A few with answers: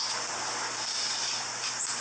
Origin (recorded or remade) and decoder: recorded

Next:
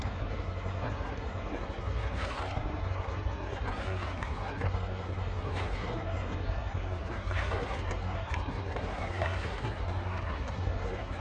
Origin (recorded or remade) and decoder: remade, codec, SNAC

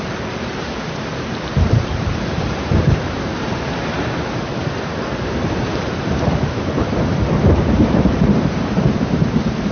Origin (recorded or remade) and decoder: remade, vocoder, BigVGAN v2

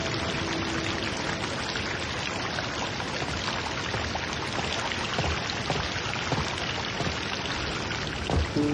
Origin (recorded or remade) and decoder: recorded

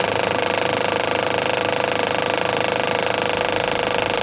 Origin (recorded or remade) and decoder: recorded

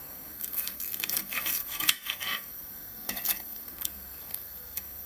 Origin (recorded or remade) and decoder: remade, codec, SNAC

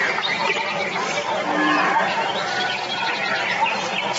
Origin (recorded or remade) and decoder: recorded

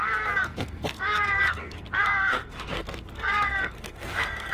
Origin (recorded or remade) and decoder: remade, codec, SNAC